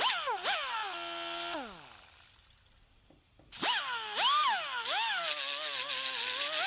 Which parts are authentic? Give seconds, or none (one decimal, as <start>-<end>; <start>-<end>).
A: 0.0-6.7